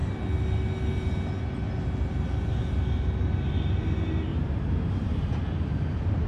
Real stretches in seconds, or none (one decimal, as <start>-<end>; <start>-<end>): 0.0-4.3; 5.2-6.3

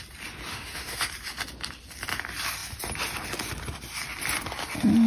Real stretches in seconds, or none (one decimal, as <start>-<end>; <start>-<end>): 0.0-0.5; 1.1-5.1

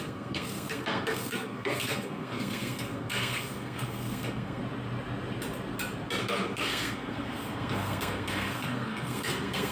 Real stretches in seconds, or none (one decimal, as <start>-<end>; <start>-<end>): 4.6-6.2

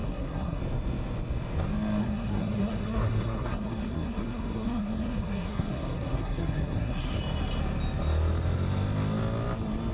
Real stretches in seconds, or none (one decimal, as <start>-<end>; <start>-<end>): 0.6-2.0; 7.2-9.9

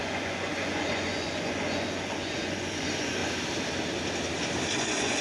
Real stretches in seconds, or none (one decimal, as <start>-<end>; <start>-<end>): 3.2-4.7